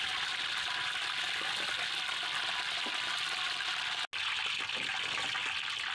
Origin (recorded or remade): recorded